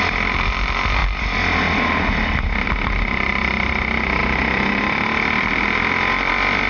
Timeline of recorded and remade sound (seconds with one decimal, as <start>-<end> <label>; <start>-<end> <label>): 0.0-6.7 recorded